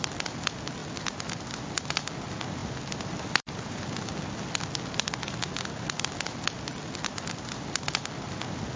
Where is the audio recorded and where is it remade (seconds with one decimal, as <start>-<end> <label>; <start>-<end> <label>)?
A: 0.0-0.8 recorded; 0.8-2.1 remade; 2.1-2.6 recorded; 2.6-3.8 remade; 3.8-8.8 recorded